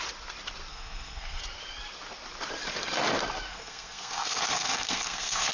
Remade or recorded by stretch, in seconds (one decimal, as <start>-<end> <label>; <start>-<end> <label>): 0.0-0.7 recorded; 0.7-1.4 remade; 1.4-3.5 recorded; 3.5-5.5 remade